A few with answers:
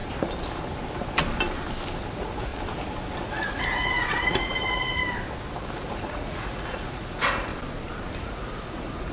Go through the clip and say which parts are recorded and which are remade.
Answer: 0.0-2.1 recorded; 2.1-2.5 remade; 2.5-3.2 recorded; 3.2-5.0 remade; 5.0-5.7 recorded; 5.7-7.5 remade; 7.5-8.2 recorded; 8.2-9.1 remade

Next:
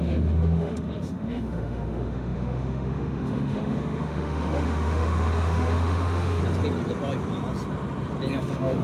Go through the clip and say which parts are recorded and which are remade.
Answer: 0.0-6.4 remade; 6.4-8.4 recorded; 8.4-8.8 remade

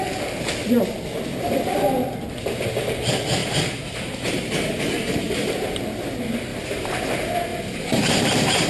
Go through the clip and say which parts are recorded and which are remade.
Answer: 0.0-3.4 recorded; 3.4-5.6 remade; 5.6-6.5 recorded; 6.5-7.0 remade; 7.0-7.5 recorded; 7.5-8.7 remade